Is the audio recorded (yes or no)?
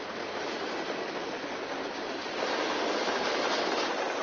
yes